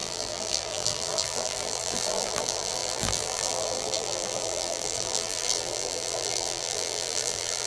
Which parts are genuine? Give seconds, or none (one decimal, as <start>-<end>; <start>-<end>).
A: none